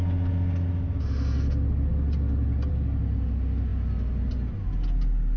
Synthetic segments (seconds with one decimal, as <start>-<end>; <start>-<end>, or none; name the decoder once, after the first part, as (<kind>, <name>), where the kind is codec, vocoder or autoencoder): none